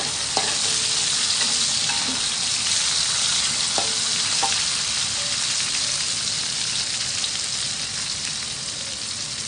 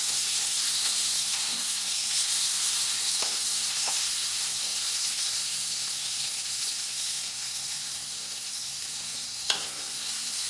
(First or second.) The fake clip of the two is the second